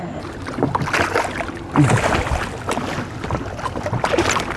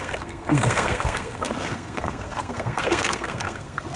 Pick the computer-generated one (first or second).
second